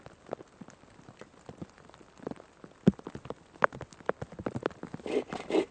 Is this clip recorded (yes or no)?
yes